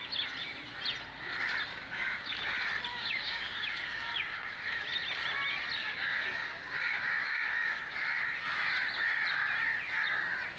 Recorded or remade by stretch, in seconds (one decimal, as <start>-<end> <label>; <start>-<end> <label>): 0.0-1.7 recorded; 1.7-2.3 remade; 2.3-2.9 recorded; 2.9-4.8 remade; 4.8-5.8 recorded; 5.8-7.8 remade; 7.8-10.6 recorded